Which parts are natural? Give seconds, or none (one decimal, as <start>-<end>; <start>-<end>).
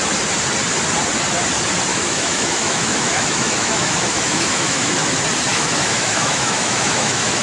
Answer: 0.0-1.9; 5.1-5.5